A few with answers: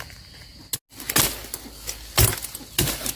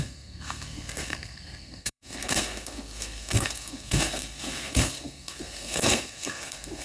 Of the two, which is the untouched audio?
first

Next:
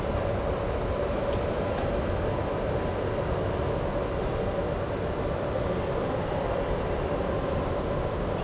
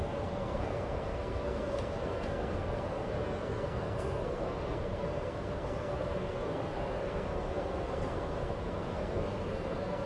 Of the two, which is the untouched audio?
first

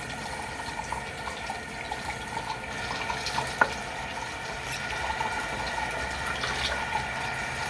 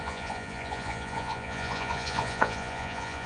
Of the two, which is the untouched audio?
first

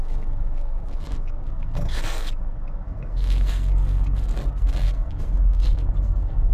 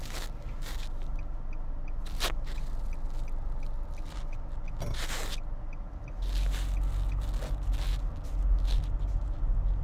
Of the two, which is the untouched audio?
second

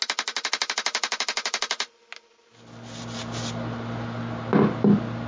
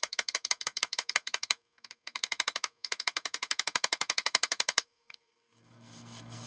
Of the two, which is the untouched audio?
first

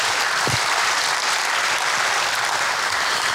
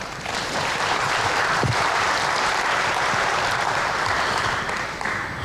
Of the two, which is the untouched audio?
first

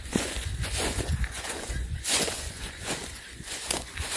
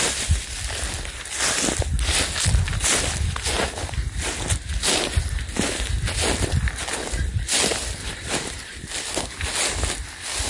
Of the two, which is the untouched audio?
second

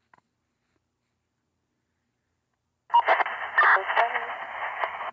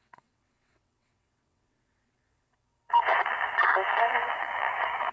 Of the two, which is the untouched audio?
first